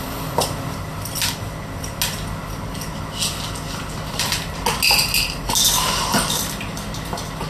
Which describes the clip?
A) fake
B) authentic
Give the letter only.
B